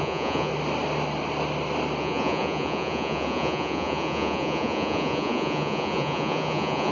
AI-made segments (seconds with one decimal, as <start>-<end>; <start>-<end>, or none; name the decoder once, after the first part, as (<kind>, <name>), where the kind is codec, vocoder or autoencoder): 0.0-0.5 (vocoder, Vocos); 2.0-6.9

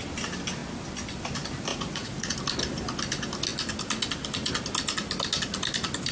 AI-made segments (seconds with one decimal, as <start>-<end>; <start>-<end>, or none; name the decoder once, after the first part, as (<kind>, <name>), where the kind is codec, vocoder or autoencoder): 1.7-2.4 (vocoder, Vocos)

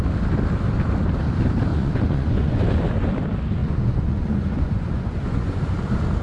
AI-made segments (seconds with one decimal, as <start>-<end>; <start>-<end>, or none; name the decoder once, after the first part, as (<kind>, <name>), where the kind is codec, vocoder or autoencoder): 1.7-2.6 (vocoder, Vocos); 3.6-5.6

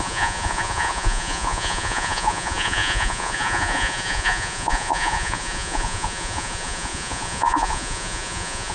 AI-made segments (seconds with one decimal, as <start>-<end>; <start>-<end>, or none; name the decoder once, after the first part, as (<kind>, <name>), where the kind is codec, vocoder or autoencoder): 0.0-8.7 (vocoder, Vocos)

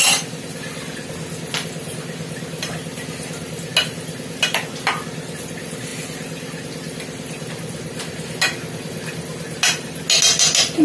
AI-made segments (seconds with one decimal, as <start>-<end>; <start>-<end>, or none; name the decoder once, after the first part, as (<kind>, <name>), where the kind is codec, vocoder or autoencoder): none